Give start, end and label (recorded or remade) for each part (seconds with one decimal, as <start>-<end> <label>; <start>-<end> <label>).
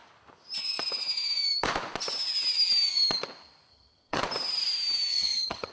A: 0.0-3.7 recorded; 3.7-4.2 remade; 4.2-5.1 recorded; 5.1-5.7 remade